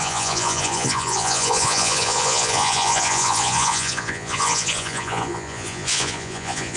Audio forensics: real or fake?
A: fake